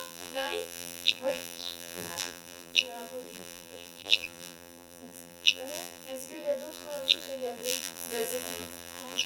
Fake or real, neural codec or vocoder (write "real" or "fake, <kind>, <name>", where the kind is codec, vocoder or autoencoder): fake, vocoder, BigVGAN v2